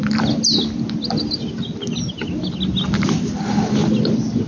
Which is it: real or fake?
real